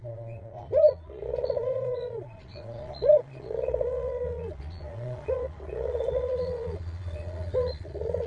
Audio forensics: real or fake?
fake